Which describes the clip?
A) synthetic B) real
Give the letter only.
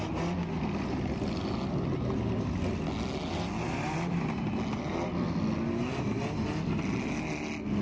B